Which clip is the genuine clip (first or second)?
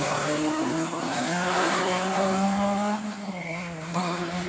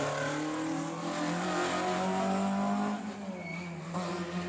second